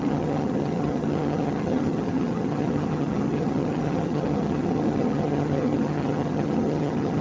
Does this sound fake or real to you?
fake